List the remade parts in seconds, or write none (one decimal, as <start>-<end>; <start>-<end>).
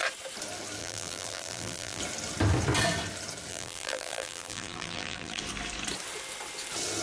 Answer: 0.8-2.0; 3.5-5.4